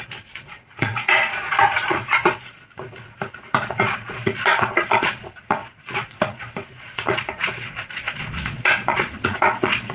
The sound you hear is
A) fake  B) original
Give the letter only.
A